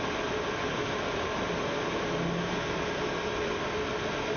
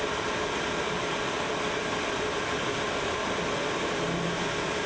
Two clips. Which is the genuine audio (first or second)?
first